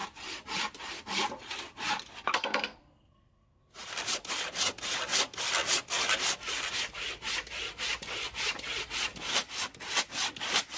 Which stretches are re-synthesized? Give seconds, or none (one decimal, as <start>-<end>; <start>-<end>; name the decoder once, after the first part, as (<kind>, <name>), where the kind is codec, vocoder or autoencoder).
2.3-3.6 (codec, SNAC)